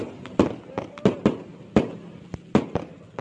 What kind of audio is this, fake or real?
real